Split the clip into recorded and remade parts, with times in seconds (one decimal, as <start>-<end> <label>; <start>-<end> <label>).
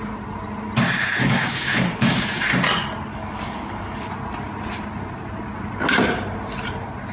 0.0-1.2 recorded; 1.2-2.5 remade; 2.5-3.1 recorded; 3.1-4.1 remade; 4.1-7.1 recorded